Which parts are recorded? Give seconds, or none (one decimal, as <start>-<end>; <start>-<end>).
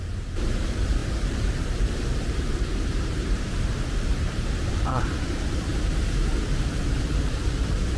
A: 5.7-6.8